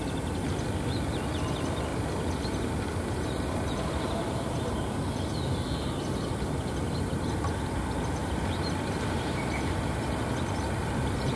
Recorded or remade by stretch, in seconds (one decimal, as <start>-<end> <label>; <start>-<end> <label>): 0.0-1.9 recorded; 1.9-4.9 remade; 4.9-8.2 recorded; 8.2-10.0 remade; 10.0-11.4 recorded